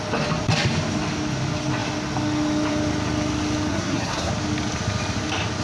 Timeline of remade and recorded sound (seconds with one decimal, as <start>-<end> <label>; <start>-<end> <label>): 0.0-3.7 recorded; 3.7-4.3 remade; 4.3-5.6 recorded